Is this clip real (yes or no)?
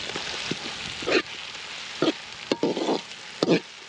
yes